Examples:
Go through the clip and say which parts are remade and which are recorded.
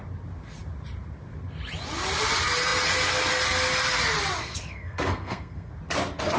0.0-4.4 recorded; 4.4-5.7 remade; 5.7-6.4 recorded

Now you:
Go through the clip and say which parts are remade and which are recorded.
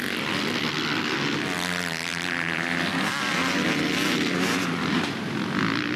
0.0-6.0 recorded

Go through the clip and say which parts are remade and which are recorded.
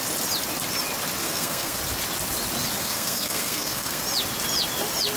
0.0-1.2 recorded; 1.2-1.8 remade; 1.8-2.8 recorded; 2.8-4.0 remade; 4.0-5.2 recorded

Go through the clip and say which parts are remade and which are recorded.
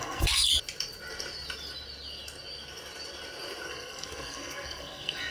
0.0-0.5 remade; 0.5-3.7 recorded; 3.7-5.3 remade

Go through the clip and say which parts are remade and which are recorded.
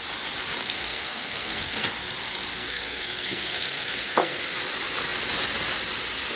0.0-0.6 recorded; 0.6-1.9 remade; 1.9-2.5 recorded; 2.5-4.4 remade; 4.4-6.4 recorded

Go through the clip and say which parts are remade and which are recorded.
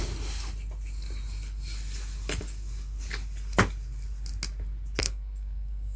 0.0-5.0 recorded; 5.0-6.0 remade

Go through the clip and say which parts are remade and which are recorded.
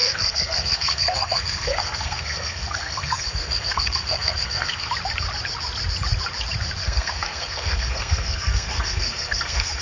0.0-4.9 remade; 4.9-6.8 recorded; 6.8-9.8 remade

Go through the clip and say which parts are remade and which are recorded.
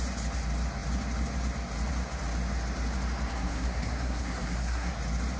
0.0-3.3 recorded; 3.3-4.9 remade; 4.9-5.4 recorded